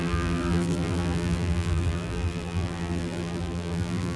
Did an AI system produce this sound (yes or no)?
yes